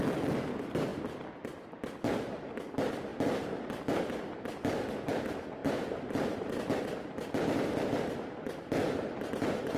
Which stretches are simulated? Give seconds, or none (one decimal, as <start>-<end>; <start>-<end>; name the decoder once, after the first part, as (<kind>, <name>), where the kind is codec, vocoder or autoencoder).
0.9-1.7 (vocoder, BigVGAN v2)